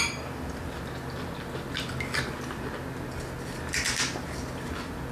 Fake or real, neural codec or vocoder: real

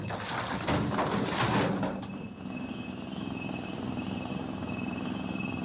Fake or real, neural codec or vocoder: real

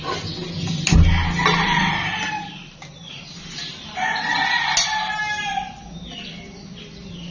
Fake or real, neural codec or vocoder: real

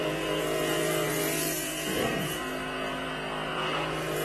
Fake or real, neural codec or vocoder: fake, vocoder, Vocos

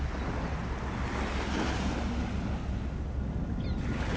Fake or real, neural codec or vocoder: real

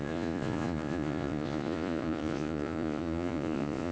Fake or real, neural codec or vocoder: fake, vocoder, Vocos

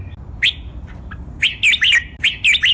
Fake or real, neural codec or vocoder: real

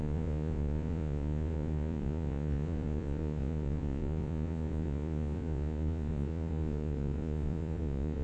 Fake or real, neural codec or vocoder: fake, vocoder, Vocos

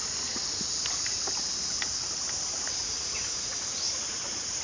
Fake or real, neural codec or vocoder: real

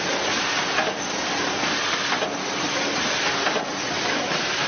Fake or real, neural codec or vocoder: real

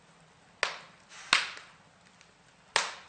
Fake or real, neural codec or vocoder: real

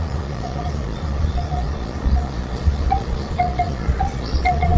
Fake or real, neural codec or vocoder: fake, vocoder, Vocos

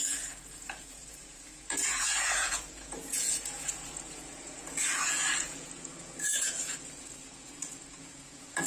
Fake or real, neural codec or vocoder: fake, vocoder, Vocos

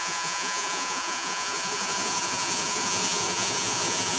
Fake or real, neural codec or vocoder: fake, vocoder, Vocos